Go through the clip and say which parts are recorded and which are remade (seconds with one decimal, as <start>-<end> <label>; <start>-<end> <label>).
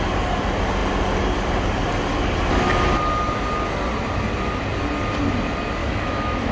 0.0-5.8 recorded; 5.8-6.5 remade